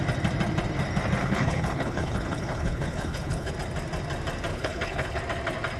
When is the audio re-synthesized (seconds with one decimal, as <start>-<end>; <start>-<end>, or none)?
1.2-3.5; 4.5-5.2